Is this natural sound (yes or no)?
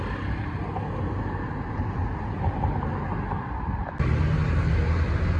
yes